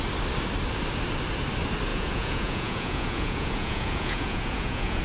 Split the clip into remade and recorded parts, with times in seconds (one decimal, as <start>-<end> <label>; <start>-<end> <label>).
0.0-1.9 recorded; 1.9-5.0 remade